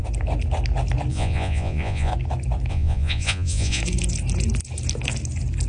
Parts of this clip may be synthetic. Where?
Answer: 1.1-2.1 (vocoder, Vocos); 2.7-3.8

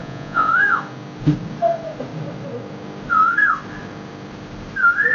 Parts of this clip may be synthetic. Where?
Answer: 0.0-0.5 (vocoder, Vocos)

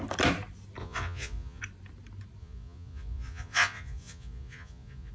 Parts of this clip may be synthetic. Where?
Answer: 0.8-1.6 (vocoder, Vocos); 2.4-5.1

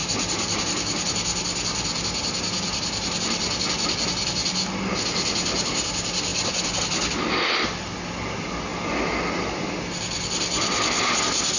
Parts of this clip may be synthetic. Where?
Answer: none